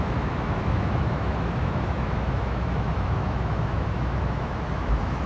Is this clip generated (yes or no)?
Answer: yes